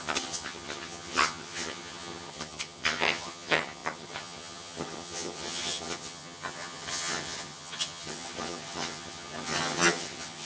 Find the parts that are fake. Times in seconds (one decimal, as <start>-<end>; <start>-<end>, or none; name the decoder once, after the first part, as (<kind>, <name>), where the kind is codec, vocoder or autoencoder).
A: 0.0-10.4 (vocoder, HiFi-GAN)